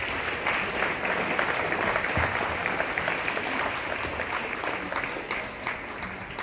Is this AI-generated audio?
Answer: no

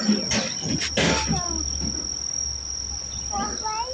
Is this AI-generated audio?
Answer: no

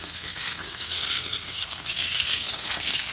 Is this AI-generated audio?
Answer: yes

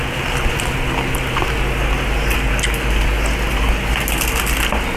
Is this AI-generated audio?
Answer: no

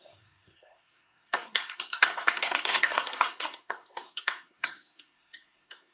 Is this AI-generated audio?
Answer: yes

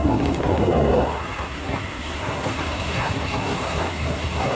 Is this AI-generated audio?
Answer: yes